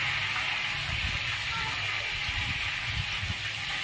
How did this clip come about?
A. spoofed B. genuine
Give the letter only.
B